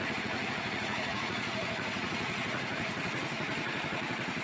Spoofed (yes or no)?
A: yes